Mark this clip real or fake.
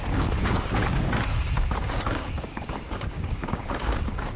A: fake